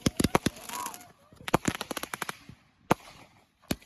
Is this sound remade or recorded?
recorded